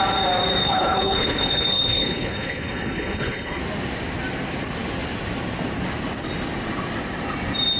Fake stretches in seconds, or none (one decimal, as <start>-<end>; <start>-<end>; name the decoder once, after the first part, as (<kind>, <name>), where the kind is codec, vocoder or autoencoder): 0.6-3.6 (codec, HILCodec)